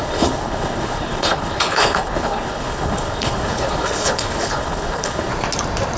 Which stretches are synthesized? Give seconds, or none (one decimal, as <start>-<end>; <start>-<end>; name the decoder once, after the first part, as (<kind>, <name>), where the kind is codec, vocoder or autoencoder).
0.0-5.3 (codec, HILCodec)

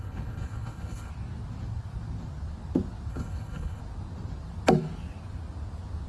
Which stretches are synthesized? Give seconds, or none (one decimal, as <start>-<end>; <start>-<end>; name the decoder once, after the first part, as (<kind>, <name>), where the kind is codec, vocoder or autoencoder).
0.0-1.1 (codec, HILCodec); 3.1-3.8

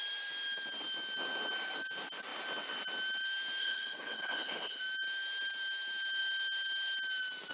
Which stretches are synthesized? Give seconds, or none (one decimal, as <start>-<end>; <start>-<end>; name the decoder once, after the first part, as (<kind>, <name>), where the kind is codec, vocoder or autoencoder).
3.6-4.8 (codec, HILCodec)

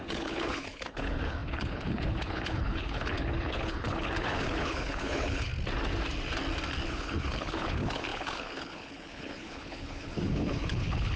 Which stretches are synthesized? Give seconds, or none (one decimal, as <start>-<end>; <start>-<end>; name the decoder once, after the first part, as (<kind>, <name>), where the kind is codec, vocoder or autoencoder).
0.0-5.5 (codec, HILCodec); 6.9-11.2

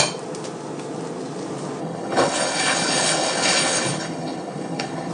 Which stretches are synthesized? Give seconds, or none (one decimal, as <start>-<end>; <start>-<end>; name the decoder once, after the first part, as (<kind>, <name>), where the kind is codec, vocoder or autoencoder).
1.8-5.1 (codec, HILCodec)